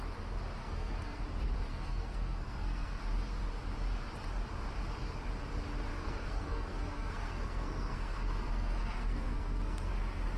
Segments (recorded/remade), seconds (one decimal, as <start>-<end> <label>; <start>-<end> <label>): 0.0-0.6 recorded; 0.6-1.2 remade; 1.2-1.7 recorded; 1.7-3.0 remade; 3.0-5.9 recorded; 5.9-9.9 remade; 9.9-10.4 recorded